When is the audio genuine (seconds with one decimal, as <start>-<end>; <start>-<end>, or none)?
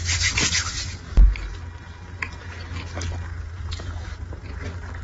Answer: 0.0-3.3; 4.6-5.0